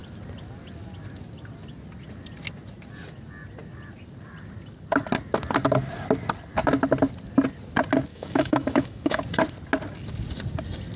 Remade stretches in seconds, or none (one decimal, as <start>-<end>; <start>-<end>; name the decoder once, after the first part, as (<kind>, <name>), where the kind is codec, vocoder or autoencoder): 8.1-9.2 (autoencoder, DAC-VAE)

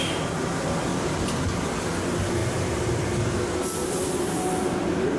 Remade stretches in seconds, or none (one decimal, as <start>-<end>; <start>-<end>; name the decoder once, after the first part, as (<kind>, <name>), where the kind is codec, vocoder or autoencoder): none

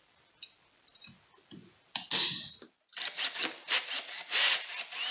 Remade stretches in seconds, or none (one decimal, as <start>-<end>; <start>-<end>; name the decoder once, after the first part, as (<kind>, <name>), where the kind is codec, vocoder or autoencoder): none

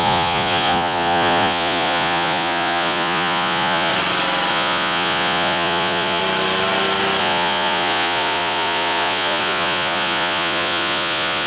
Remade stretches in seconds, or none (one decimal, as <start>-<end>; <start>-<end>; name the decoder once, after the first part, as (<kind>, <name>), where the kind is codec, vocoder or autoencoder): 0.0-3.9 (vocoder, Vocos); 4.5-6.2; 7.2-11.5

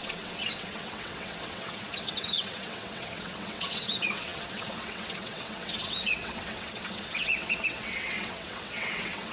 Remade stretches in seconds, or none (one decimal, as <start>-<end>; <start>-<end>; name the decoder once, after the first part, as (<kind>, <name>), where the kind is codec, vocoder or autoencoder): 0.0-9.3 (vocoder, WaveNeXt)

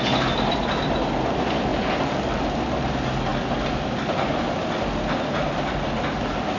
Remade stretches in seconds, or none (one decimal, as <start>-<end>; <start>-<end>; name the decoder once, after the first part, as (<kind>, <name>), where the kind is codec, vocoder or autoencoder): 1.7-2.2 (vocoder, BigVGAN v2)

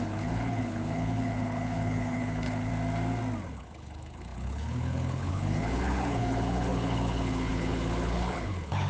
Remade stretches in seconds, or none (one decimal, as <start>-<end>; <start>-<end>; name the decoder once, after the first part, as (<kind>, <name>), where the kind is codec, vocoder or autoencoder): 0.0-2.7 (codec, HILCodec); 3.5-8.9

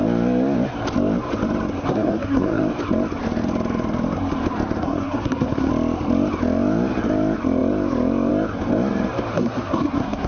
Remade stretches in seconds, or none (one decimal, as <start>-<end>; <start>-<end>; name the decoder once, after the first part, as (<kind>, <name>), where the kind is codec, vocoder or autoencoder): 1.8-2.6 (codec, SNAC); 4.8-5.7; 9.3-10.3